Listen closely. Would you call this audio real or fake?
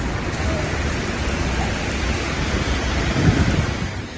real